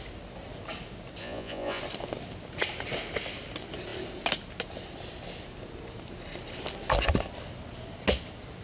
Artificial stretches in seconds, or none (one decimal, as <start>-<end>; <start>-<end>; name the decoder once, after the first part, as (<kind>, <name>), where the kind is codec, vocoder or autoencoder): 1.2-1.8 (vocoder, Vocos)